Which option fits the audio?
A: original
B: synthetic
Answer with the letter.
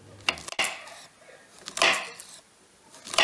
A